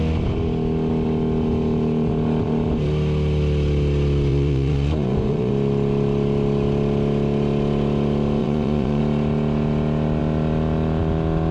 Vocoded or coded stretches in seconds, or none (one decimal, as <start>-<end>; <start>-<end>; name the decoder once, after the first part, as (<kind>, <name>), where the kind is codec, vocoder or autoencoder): 4.3-5.5 (vocoder, Vocos); 8.4-9.0